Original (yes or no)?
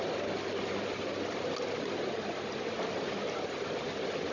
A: yes